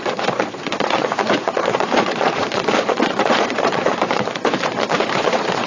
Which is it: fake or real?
fake